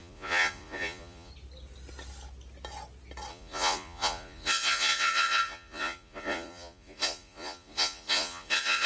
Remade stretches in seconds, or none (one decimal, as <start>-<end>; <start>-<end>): 0.0-1.3; 3.3-8.9